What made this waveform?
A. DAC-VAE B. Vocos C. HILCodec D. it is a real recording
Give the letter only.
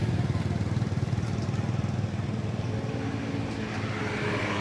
D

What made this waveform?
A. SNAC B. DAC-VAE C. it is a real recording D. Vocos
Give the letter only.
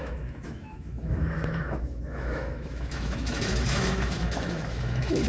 B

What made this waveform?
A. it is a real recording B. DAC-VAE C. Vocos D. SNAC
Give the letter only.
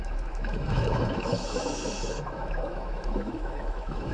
B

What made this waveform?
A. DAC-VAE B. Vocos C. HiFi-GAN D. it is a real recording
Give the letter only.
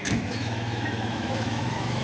A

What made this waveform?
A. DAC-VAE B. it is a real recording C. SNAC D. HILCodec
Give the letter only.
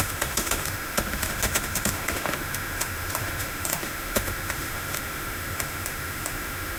A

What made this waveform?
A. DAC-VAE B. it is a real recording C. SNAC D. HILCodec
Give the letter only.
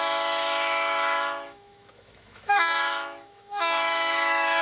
A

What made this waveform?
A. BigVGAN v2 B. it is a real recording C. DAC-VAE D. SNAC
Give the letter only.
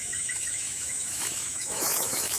C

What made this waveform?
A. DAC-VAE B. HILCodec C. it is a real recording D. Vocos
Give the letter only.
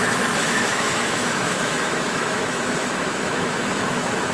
A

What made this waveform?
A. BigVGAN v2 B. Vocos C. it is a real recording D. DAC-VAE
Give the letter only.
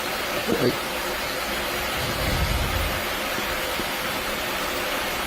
C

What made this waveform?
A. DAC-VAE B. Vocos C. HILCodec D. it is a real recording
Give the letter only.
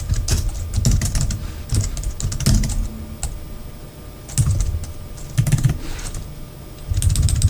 D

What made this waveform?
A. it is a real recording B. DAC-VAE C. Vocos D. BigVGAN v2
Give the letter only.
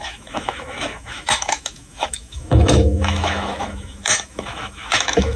B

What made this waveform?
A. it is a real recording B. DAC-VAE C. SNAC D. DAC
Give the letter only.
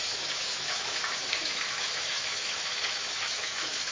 B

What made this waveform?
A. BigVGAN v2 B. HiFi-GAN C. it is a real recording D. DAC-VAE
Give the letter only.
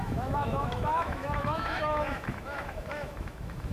D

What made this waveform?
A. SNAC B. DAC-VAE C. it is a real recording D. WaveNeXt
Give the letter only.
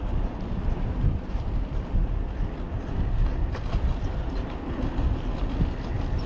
C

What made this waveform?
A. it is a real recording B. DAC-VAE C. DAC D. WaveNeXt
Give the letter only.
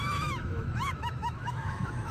B